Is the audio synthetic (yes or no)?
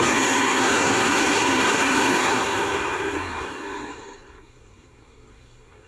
yes